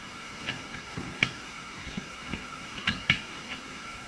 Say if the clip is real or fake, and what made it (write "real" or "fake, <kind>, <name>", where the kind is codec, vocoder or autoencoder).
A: fake, codec, SNAC